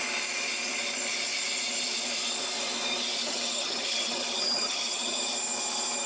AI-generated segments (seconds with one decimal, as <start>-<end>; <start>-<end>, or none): 3.2-5.2